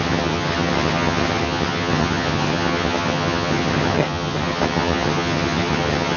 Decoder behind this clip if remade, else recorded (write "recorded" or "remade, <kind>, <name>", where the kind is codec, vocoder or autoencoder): remade, vocoder, HiFi-GAN